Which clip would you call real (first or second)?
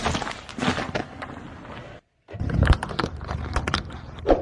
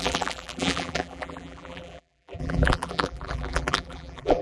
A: first